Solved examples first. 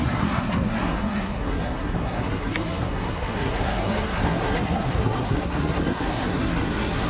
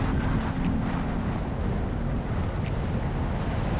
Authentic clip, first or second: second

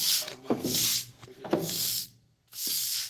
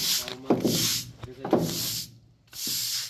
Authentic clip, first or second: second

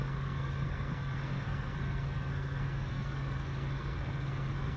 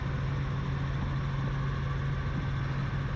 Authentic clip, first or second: second